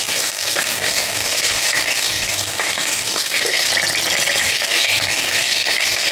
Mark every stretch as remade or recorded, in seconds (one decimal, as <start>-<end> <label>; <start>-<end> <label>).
0.0-3.7 remade; 3.7-4.4 recorded; 4.4-6.1 remade